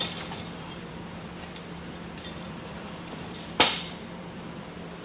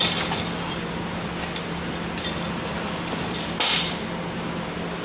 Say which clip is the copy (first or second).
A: first